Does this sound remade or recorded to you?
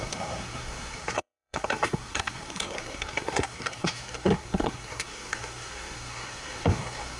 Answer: remade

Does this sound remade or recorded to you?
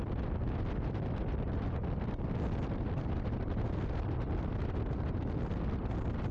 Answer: recorded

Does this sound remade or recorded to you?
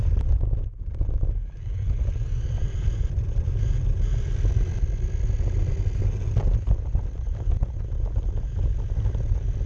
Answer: recorded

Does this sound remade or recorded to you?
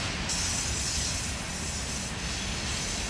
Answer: recorded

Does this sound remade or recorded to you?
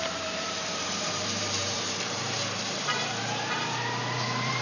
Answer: remade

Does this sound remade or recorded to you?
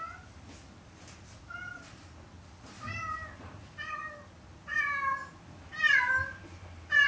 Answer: recorded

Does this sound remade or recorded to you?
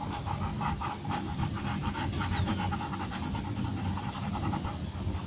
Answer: recorded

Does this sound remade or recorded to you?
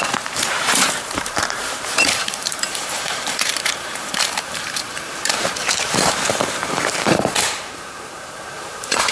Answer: remade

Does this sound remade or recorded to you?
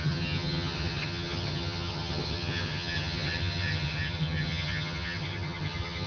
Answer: remade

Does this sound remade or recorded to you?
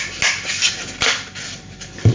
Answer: recorded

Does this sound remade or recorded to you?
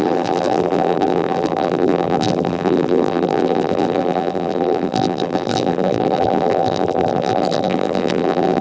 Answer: remade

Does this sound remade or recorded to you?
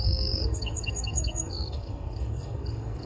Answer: remade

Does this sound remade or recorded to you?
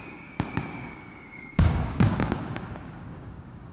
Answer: remade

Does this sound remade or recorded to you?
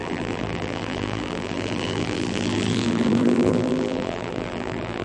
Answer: remade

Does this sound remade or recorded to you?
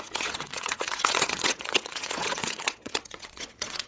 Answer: remade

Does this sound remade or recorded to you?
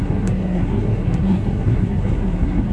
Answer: remade